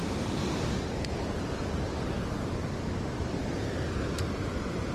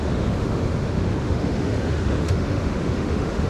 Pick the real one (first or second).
first